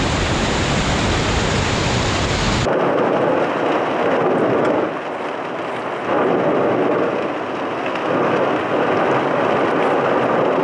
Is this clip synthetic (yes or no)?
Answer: no